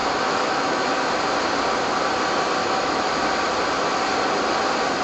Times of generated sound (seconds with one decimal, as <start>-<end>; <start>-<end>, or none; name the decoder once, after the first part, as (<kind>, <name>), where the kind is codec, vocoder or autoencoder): 0.0-0.9 (autoencoder, DAC-VAE); 2.6-3.1